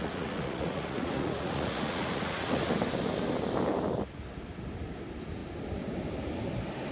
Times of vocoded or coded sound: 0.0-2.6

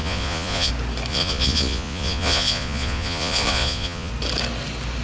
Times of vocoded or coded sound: 0.0-0.7; 1.1-4.1

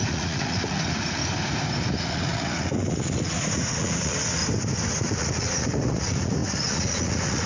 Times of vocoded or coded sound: 0.0-1.2; 2.0-4.4; 5.0-7.5